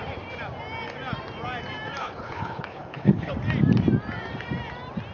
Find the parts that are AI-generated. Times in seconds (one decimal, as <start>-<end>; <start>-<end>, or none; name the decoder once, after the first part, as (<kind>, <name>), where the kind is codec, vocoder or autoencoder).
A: 2.0-3.3 (codec, HILCodec)